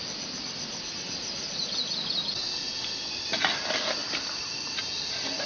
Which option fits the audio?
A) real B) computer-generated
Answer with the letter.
A